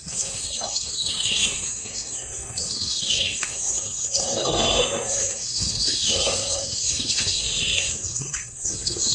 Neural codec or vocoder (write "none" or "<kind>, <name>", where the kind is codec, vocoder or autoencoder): codec, SNAC